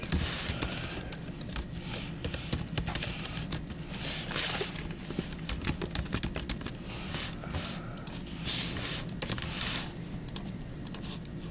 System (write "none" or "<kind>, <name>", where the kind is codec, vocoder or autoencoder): none